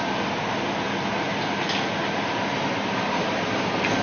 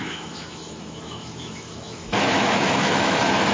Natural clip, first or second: first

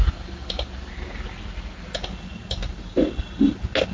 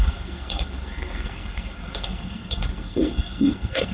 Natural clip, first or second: first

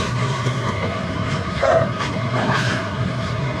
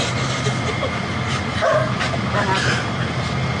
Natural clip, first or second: second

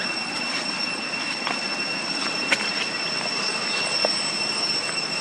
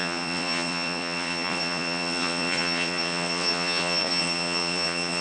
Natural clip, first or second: first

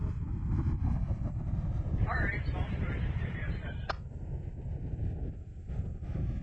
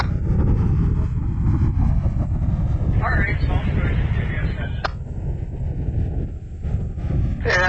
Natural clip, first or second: second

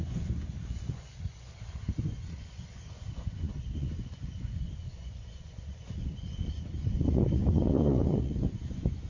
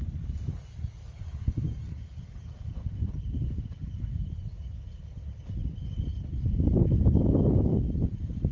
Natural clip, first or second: second